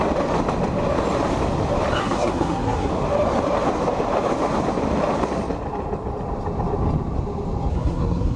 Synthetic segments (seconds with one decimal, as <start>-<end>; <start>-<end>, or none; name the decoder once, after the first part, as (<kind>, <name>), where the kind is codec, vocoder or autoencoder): 2.0-2.9 (codec, SNAC); 7.7-8.4